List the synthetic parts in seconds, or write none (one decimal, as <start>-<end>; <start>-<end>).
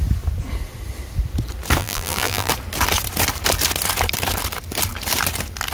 1.8-2.5